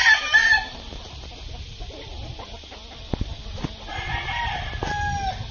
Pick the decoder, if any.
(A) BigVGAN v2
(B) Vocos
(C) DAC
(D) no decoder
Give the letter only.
D